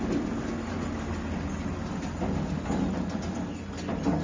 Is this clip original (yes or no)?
yes